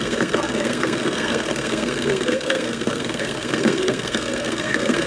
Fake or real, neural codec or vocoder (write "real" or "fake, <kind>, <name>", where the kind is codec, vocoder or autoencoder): fake, codec, SNAC